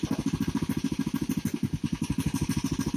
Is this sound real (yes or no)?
yes